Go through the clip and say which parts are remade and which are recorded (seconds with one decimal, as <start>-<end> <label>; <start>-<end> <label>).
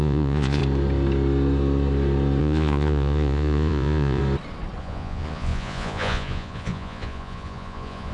0.0-0.6 remade; 0.6-2.4 recorded; 2.4-4.2 remade; 4.2-4.8 recorded; 4.8-8.1 remade